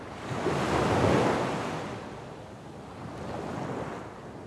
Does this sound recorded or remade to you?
recorded